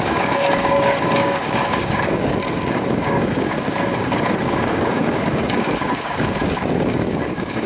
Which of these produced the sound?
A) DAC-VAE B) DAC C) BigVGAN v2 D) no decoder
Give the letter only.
B